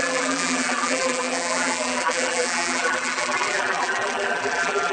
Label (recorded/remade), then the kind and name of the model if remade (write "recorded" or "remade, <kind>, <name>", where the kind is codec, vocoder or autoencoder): remade, vocoder, BigVGAN v2